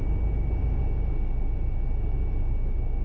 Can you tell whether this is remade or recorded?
recorded